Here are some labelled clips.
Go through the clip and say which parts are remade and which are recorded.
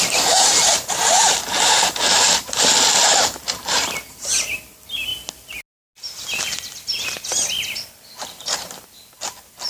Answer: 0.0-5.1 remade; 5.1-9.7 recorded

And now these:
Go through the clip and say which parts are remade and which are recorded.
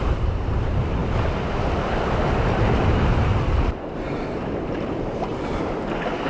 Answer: 0.0-1.0 remade; 1.0-2.8 recorded; 2.8-5.3 remade; 5.3-6.3 recorded